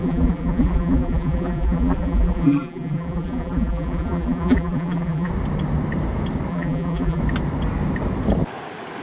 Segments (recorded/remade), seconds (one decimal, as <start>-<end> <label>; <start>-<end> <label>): 0.0-5.3 remade; 5.3-6.5 recorded; 6.5-7.2 remade; 7.2-9.0 recorded